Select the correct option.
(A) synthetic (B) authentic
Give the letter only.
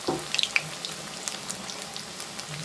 B